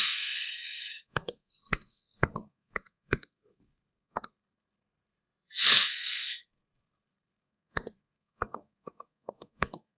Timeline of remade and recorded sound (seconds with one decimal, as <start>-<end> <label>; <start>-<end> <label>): 0.0-10.0 remade